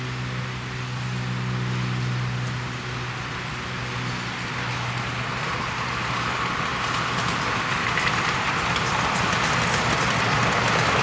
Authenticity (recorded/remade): recorded